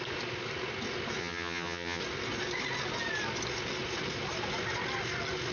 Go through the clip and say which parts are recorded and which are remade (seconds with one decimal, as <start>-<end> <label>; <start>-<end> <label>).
0.0-1.2 recorded; 1.2-2.0 remade; 2.0-5.5 recorded

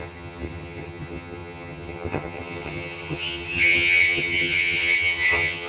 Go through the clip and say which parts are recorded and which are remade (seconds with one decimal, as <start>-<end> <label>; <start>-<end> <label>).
0.0-5.7 remade

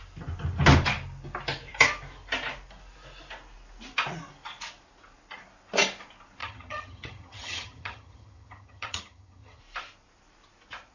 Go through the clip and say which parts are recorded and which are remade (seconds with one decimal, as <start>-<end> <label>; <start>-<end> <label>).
0.0-6.4 recorded; 6.4-9.6 remade; 9.6-10.9 recorded

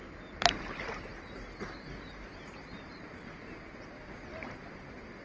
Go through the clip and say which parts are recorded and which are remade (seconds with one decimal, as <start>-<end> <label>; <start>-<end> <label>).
0.0-5.2 recorded

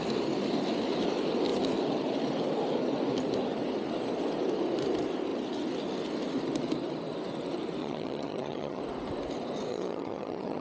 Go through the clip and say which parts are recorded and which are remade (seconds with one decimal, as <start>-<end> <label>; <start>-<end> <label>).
0.0-7.8 recorded; 7.8-8.8 remade; 8.8-9.7 recorded; 9.7-10.6 remade